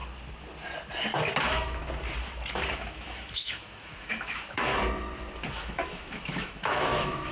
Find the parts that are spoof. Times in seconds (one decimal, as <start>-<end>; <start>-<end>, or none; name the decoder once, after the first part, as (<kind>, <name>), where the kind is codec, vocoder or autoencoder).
1.4-1.8 (autoencoder, DAC-VAE); 2.7-4.7; 5.5-7.3